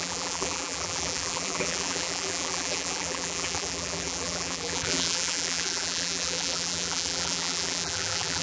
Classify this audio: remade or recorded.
remade